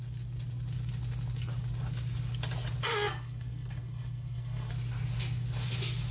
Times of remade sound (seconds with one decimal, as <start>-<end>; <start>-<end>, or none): 2.9-4.7